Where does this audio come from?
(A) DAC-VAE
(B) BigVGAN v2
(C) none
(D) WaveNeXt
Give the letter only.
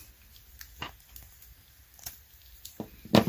C